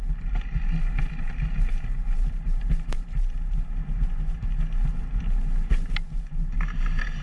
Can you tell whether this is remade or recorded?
remade